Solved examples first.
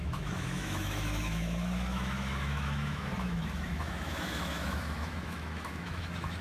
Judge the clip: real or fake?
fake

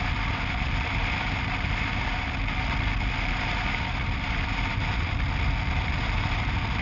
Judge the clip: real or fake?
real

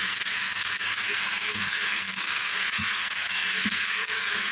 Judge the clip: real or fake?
fake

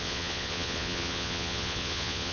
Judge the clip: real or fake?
fake